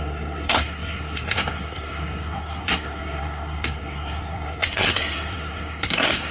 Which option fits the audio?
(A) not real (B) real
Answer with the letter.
A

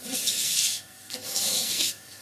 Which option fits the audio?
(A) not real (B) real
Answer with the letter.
A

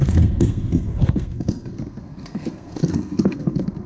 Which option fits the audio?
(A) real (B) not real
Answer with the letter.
B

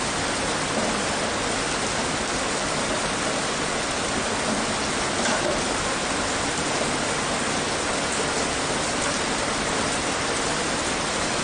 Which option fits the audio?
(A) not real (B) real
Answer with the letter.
B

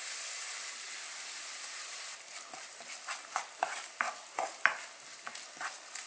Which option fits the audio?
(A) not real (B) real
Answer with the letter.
B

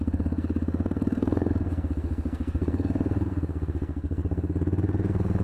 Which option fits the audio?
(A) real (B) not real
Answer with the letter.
B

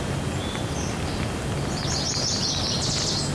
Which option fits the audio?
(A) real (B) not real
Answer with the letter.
A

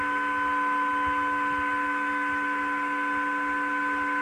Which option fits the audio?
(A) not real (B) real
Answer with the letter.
B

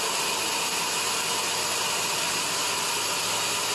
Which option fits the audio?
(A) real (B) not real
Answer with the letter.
A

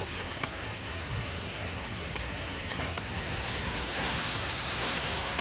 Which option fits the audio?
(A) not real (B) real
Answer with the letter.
A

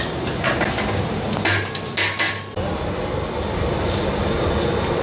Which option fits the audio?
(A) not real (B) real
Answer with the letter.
B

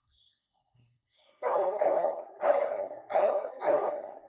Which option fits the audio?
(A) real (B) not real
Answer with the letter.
B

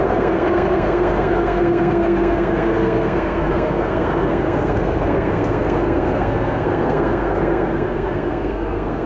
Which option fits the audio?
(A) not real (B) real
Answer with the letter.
A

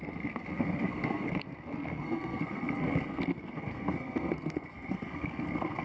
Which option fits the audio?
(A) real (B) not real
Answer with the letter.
B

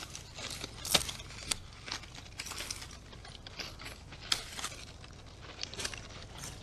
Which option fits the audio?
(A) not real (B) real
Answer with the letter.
B